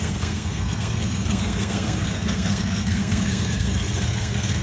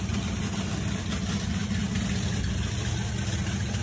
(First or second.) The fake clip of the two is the first